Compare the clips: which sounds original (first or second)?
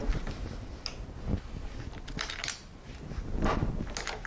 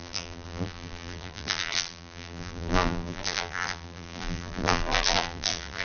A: first